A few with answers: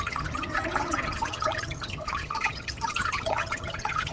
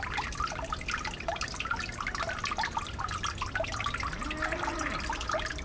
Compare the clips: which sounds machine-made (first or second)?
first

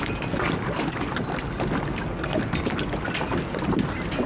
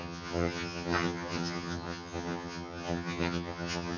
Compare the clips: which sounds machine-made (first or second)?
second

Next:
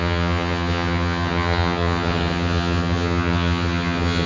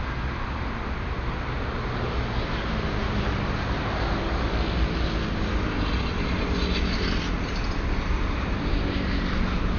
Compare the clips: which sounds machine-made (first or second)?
first